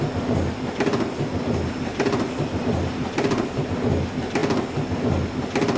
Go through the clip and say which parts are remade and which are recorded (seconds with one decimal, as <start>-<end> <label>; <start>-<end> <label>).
0.0-1.9 recorded; 1.9-3.6 remade; 3.6-5.8 recorded